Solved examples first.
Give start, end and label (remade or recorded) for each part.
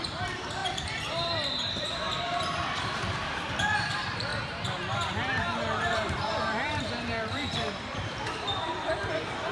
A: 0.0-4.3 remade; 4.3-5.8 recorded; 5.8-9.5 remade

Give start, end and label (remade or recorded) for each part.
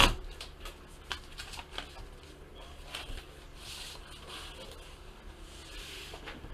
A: 0.0-6.5 recorded